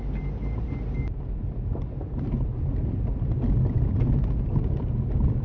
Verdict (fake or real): real